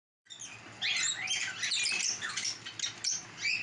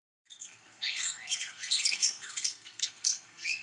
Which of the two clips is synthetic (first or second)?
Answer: second